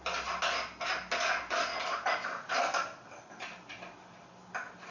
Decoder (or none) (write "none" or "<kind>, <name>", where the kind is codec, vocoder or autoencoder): none